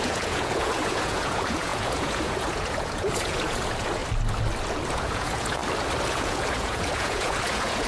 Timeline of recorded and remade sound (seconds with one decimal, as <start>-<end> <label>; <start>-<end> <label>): 0.0-4.0 remade; 4.0-4.9 recorded; 4.9-5.6 remade; 5.6-6.1 recorded; 6.1-7.9 remade